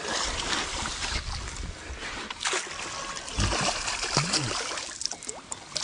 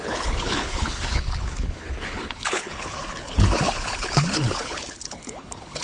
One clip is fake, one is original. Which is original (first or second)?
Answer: first